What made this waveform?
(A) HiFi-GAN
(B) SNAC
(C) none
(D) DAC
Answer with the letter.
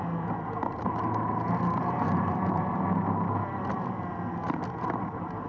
C